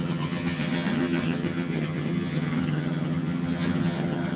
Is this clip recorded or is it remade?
remade